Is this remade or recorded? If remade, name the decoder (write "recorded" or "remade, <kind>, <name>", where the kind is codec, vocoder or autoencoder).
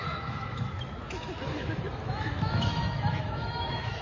remade, autoencoder, DAC-VAE